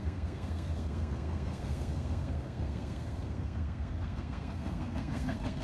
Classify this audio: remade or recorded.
remade